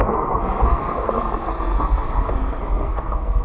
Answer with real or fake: fake